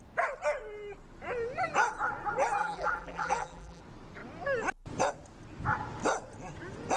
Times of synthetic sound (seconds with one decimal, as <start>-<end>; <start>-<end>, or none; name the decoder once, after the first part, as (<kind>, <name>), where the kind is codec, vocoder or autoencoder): 2.6-3.8 (vocoder, BigVGAN v2)